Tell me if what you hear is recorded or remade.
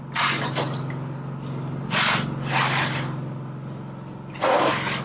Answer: recorded